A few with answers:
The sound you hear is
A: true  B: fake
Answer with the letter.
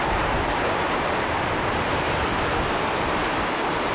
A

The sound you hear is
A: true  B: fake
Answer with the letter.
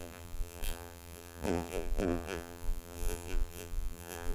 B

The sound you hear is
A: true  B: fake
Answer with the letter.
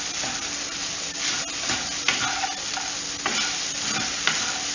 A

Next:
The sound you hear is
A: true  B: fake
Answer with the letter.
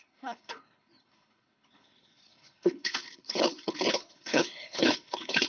B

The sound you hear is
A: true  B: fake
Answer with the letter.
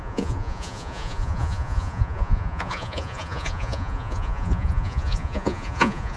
B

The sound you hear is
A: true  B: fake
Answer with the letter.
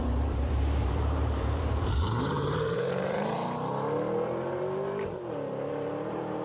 B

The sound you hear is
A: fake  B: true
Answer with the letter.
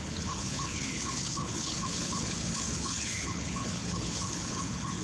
A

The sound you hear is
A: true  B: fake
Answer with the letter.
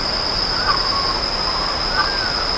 A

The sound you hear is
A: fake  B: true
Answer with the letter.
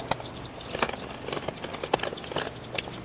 B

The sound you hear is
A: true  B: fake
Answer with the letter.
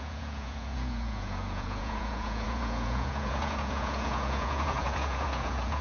B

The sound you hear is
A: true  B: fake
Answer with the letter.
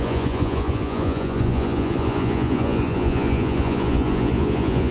B